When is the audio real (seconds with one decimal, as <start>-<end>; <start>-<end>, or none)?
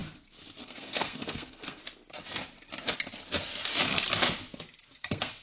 0.0-0.6; 1.8-5.0